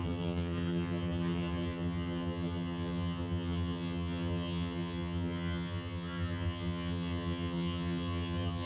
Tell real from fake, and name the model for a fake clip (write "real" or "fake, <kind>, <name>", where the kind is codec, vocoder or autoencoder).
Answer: fake, vocoder, HiFi-GAN